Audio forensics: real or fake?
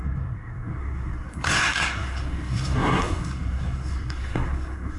fake